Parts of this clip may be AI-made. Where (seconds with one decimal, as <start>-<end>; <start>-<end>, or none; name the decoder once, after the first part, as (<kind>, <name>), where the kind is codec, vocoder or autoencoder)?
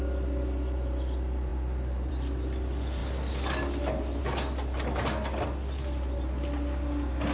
none